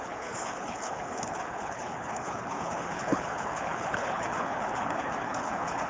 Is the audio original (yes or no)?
no